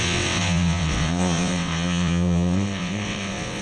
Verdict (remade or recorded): remade